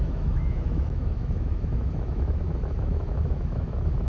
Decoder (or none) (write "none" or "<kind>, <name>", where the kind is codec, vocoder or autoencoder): autoencoder, DAC-VAE